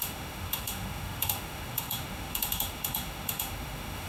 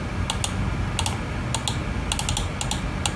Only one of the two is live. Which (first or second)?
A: second